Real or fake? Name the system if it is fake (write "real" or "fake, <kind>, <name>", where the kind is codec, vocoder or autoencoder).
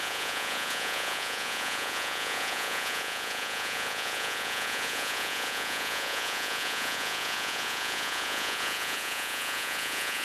fake, vocoder, Vocos